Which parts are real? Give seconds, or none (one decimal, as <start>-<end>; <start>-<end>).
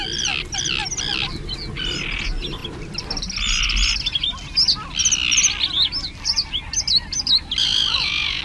0.0-7.6